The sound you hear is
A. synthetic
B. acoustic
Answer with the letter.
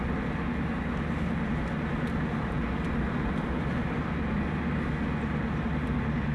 B